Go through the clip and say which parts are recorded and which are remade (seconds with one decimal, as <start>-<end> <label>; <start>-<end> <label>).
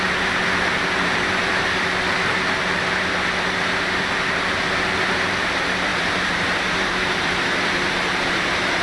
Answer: 0.0-2.3 remade; 2.3-5.0 recorded; 5.0-8.8 remade